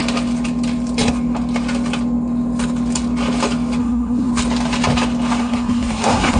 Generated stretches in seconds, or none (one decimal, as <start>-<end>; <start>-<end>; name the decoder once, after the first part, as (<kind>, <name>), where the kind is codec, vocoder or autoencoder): 3.8-4.3 (codec, SNAC); 5.4-6.4